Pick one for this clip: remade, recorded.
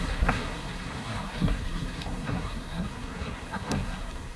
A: remade